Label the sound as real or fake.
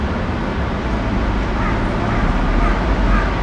real